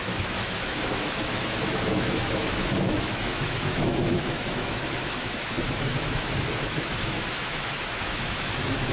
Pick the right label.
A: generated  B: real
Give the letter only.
A